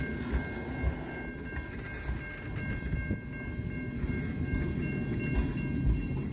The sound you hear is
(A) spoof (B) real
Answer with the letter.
B